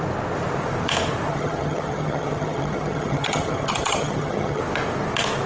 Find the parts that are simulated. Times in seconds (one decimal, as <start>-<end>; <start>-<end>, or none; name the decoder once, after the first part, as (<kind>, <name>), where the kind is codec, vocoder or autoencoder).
1.3-4.6 (vocoder, HiFi-GAN)

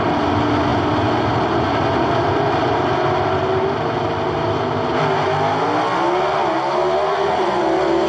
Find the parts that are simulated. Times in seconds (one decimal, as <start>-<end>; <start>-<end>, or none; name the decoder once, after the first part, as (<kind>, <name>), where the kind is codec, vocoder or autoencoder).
none

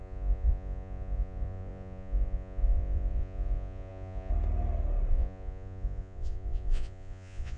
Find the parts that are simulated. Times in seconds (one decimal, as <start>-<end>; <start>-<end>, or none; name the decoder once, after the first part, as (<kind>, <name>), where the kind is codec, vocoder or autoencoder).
0.0-4.3 (vocoder, Vocos); 5.1-7.6

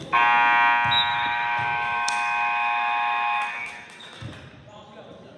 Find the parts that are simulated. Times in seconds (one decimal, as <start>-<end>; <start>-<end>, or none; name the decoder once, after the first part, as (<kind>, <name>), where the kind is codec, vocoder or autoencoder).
1.1-4.3 (autoencoder, DAC-VAE)